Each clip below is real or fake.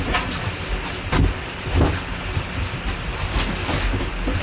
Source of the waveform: real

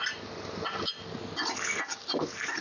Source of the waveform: real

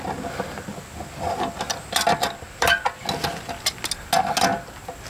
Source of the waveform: real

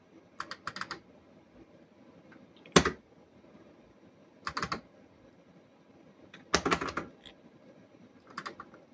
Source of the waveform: real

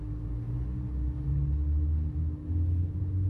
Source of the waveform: real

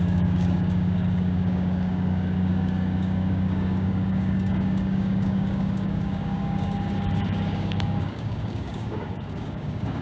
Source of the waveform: fake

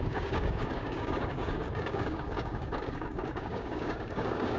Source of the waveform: fake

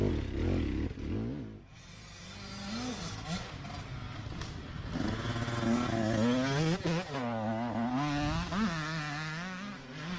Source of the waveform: real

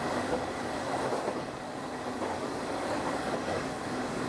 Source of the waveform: fake